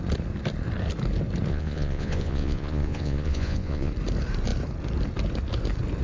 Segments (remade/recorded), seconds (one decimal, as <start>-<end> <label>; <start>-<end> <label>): 0.0-1.5 recorded; 1.5-3.9 remade; 3.9-6.0 recorded